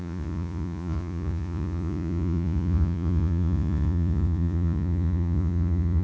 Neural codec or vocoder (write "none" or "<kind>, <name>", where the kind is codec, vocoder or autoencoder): vocoder, Vocos